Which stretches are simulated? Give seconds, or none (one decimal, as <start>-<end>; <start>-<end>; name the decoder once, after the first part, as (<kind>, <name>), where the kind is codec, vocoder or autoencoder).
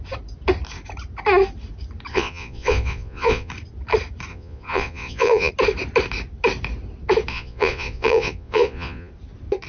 2.1-3.5 (vocoder, Vocos); 4.3-5.5; 7.3-9.1